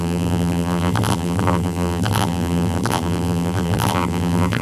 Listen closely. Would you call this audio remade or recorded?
remade